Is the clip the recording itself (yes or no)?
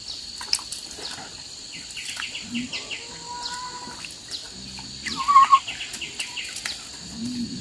yes